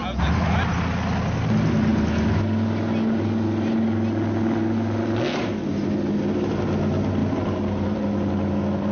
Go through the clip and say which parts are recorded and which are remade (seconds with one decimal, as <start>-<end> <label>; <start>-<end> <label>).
0.0-7.2 recorded; 7.2-8.0 remade; 8.0-8.9 recorded

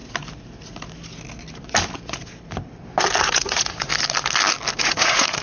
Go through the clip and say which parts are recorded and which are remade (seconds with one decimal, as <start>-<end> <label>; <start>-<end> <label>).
0.0-3.2 recorded; 3.2-3.9 remade; 3.9-4.8 recorded; 4.8-5.4 remade

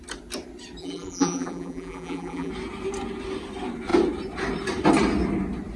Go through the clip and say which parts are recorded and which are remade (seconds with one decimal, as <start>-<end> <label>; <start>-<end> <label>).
0.0-0.8 recorded; 0.8-2.5 remade; 2.5-5.8 recorded